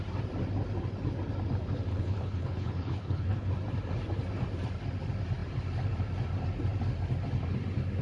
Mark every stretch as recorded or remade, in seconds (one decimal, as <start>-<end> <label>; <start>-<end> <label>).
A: 0.0-1.9 recorded; 1.9-3.5 remade; 3.5-8.0 recorded